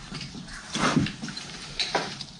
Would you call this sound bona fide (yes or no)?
no